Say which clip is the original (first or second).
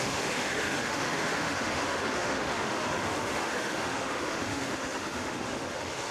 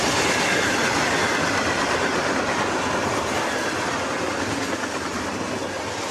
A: second